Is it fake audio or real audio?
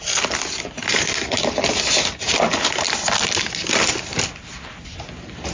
real